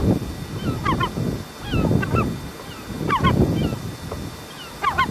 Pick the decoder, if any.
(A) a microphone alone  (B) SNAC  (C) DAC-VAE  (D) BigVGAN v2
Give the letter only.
A